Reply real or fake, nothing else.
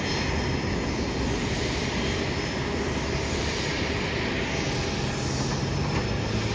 real